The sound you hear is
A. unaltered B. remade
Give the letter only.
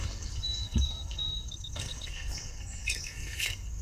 B